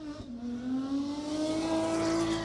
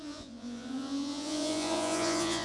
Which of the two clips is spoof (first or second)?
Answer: second